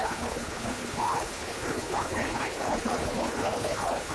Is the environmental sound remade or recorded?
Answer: remade